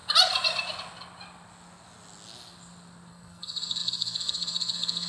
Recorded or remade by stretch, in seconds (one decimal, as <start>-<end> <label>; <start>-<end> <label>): 0.0-3.1 recorded; 3.1-5.1 remade

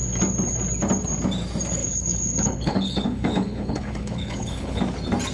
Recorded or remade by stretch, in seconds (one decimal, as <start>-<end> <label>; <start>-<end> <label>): 0.0-1.8 recorded; 1.8-4.8 remade; 4.8-5.3 recorded

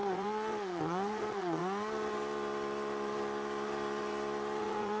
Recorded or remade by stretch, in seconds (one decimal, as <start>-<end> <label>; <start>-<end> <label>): 0.0-1.6 remade; 1.6-4.6 recorded; 4.6-5.0 remade

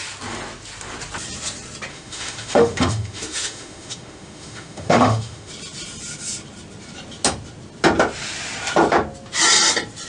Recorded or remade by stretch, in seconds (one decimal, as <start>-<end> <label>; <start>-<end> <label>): 0.0-1.9 recorded; 1.9-5.5 remade; 5.5-10.1 recorded

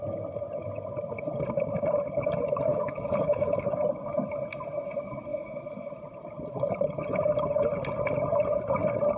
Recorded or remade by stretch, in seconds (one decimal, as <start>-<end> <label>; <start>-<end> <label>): 0.0-2.7 recorded; 2.7-3.7 remade; 3.7-5.3 recorded; 5.3-5.9 remade; 5.9-9.2 recorded

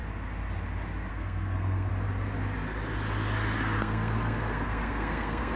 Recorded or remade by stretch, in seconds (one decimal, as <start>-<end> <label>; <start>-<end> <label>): 0.0-1.1 recorded; 1.1-1.9 remade; 1.9-3.8 recorded; 3.8-5.6 remade

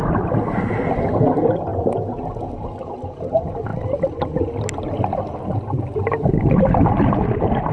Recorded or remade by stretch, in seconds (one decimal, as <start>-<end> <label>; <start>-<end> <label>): 0.0-1.7 recorded; 1.7-2.5 remade; 2.5-7.7 recorded

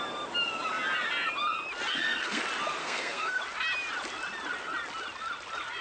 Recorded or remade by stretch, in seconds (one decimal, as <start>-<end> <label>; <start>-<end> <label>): 0.0-1.9 recorded; 1.9-2.4 remade; 2.4-2.8 recorded; 2.8-3.4 remade; 3.4-5.8 recorded